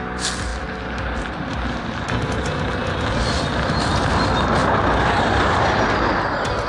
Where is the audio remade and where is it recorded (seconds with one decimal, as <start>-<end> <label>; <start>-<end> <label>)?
0.0-4.6 recorded; 4.6-5.6 remade; 5.6-6.7 recorded